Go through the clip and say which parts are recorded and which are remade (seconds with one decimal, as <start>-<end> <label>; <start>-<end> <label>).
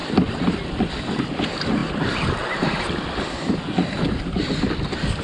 0.0-5.2 recorded